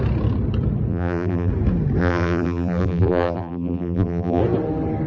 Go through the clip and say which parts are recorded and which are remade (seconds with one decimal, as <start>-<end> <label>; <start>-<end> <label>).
0.0-0.9 recorded; 0.9-1.5 remade; 1.5-2.0 recorded; 2.0-4.4 remade; 4.4-5.1 recorded